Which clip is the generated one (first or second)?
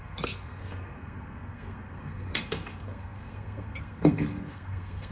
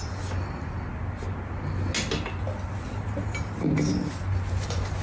first